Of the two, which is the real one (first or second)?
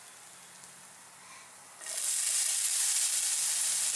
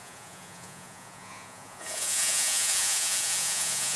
first